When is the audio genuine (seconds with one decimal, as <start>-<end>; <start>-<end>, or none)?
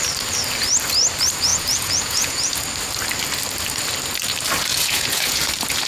0.0-1.5; 2.5-4.7; 5.5-5.9